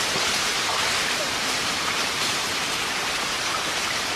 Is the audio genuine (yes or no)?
no